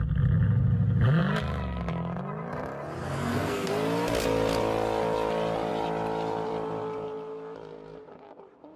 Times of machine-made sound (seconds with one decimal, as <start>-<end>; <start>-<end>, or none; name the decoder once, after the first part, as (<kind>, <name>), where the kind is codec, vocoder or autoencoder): 3.0-3.7 (codec, SNAC)